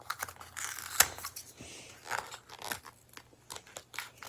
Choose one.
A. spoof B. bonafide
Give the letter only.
B